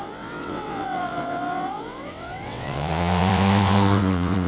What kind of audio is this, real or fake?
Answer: fake